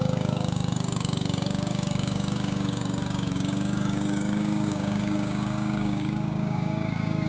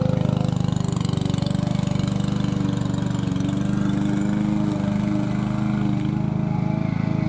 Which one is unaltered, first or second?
second